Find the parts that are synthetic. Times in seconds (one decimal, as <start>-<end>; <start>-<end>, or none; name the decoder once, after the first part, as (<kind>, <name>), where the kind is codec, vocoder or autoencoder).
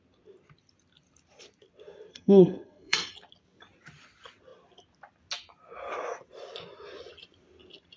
2.1-3.1 (codec, SNAC)